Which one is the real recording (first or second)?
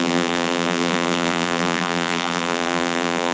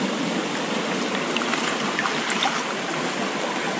second